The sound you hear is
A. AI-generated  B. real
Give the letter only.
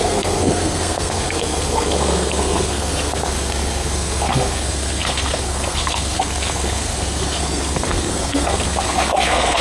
A